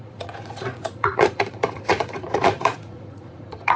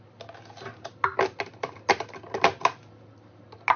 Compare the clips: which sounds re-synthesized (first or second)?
first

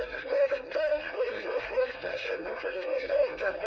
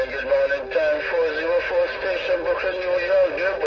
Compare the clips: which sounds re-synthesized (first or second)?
first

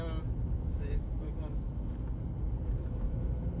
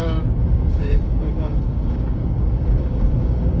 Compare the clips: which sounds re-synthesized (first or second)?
second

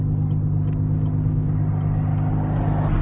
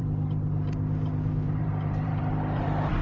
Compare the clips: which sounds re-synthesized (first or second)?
second